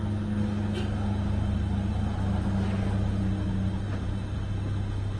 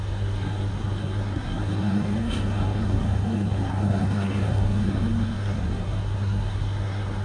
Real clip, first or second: first